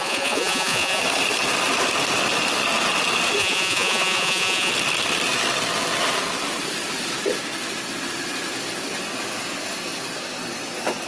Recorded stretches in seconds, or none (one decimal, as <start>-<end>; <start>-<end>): 1.0-3.4; 4.7-11.1